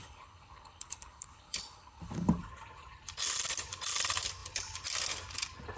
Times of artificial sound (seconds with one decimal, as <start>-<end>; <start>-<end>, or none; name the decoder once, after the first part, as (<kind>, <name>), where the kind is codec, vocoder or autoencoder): 0.0-2.4 (codec, HILCodec)